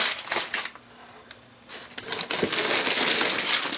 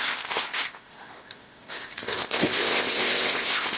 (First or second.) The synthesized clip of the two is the second